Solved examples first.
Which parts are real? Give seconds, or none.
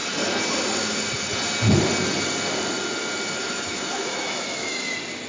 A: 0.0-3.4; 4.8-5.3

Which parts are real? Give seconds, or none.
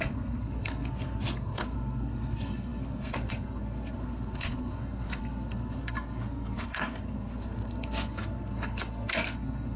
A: none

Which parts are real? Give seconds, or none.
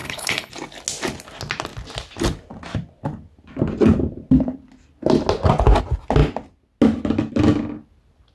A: 0.5-8.3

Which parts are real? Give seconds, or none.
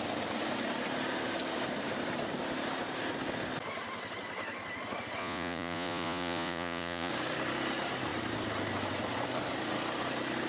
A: 0.0-5.2; 7.1-10.5